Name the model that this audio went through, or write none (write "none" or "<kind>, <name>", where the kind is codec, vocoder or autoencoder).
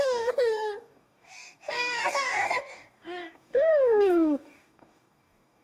codec, DAC